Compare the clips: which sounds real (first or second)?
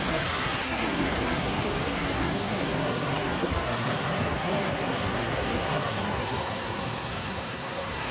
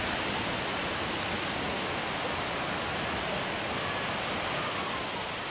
second